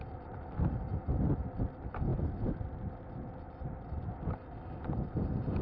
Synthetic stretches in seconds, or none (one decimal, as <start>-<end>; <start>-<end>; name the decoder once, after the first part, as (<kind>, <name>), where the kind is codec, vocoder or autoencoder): none